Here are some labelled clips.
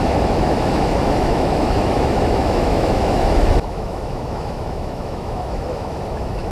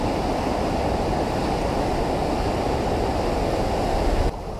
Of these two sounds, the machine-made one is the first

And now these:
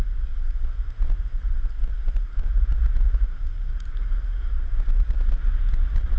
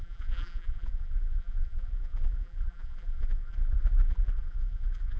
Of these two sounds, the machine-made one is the second